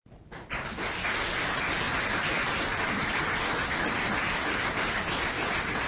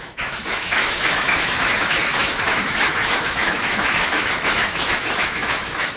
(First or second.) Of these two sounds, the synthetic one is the second